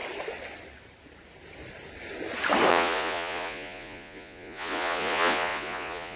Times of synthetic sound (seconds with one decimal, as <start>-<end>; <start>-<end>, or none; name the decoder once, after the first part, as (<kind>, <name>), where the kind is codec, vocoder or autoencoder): 2.7-6.2 (vocoder, Vocos)